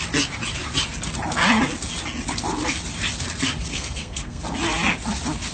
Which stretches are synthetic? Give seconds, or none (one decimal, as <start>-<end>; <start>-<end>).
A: 3.7-4.4